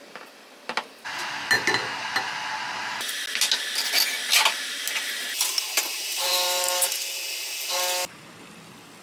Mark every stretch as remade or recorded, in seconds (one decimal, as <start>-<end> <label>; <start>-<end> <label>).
0.0-5.9 recorded; 5.9-7.0 remade; 7.0-9.0 recorded

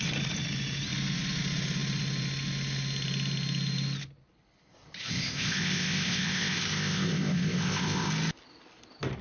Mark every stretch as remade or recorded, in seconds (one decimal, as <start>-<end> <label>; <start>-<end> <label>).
0.0-5.0 recorded; 5.0-8.1 remade; 8.1-9.2 recorded

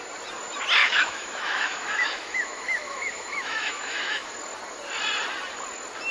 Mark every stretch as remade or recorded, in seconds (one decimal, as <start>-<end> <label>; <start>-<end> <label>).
0.0-0.8 recorded; 0.8-4.3 remade; 4.3-6.1 recorded

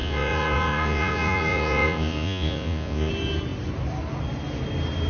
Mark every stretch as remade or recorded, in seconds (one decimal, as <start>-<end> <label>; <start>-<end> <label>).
0.0-3.1 remade; 3.1-5.1 recorded

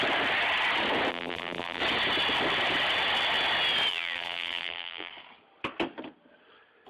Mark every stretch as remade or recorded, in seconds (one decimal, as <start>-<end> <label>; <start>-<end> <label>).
0.0-1.1 recorded; 1.1-1.8 remade; 1.8-3.9 recorded; 3.9-5.1 remade; 5.1-6.9 recorded

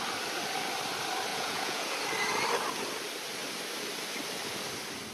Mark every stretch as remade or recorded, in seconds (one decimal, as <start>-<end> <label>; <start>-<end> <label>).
0.0-1.3 recorded; 1.3-2.0 remade; 2.0-5.1 recorded

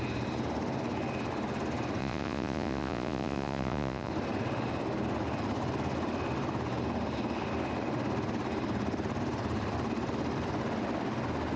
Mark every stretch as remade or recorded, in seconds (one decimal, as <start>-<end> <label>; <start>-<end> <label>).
0.0-2.0 recorded; 2.0-4.1 remade; 4.1-11.6 recorded

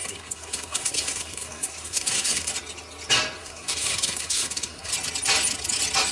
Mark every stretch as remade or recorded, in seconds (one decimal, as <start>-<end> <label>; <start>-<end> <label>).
0.0-2.5 remade; 2.5-3.4 recorded; 3.4-4.9 remade; 4.9-6.1 recorded